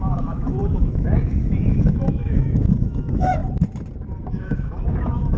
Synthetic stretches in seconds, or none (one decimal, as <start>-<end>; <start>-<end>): 0.0-3.4; 4.3-5.4